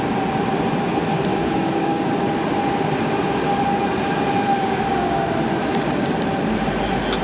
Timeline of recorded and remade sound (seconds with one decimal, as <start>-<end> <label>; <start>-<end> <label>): 0.0-1.3 recorded; 1.3-2.1 remade; 2.1-4.5 recorded; 4.5-5.3 remade; 5.3-7.2 recorded